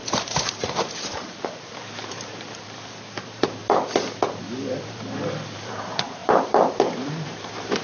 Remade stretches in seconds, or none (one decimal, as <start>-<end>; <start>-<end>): 0.0-3.6; 4.3-7.8